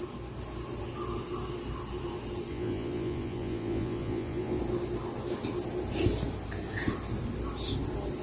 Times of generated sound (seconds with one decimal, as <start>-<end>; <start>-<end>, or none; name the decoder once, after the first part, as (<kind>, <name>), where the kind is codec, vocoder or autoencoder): 2.5-4.6 (vocoder, Vocos)

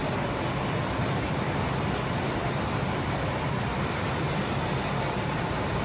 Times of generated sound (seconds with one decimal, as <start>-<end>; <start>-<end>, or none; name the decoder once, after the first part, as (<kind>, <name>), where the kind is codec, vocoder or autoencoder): none